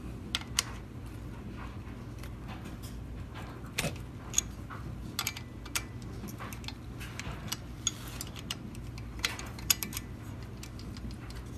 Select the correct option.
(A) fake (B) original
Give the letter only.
B